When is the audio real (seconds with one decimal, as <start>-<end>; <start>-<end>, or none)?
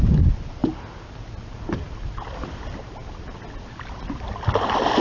0.0-5.0